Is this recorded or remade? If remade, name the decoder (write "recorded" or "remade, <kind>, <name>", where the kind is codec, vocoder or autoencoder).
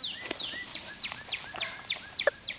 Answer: remade, vocoder, BigVGAN v2